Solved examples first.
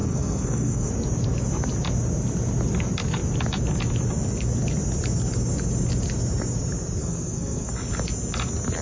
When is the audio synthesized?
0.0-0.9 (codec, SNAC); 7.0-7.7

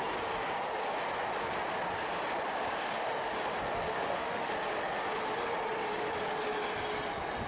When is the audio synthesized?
3.9-4.5 (autoencoder, DAC-VAE)